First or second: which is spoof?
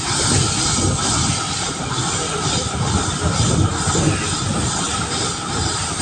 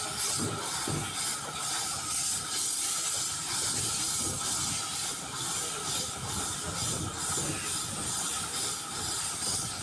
first